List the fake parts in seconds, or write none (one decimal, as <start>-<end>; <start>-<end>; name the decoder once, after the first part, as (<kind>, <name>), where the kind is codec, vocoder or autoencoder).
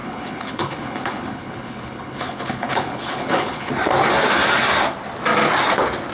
0.0-3.7 (codec, HILCodec)